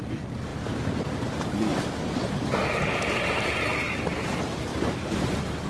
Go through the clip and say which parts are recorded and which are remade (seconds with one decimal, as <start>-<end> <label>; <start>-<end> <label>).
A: 0.0-4.7 recorded; 4.7-5.3 remade; 5.3-5.7 recorded